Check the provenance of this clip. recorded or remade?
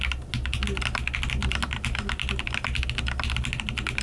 recorded